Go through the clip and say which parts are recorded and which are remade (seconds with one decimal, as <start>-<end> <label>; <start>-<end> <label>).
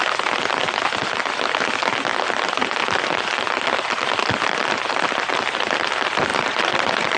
0.0-6.3 recorded; 6.3-7.2 remade